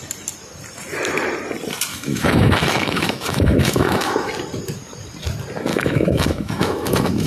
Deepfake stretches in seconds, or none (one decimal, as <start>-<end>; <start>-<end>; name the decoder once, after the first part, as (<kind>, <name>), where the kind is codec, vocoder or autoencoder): 1.9-4.3 (autoencoder, DAC-VAE); 5.7-7.3